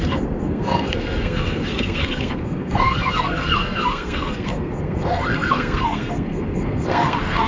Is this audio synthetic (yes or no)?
yes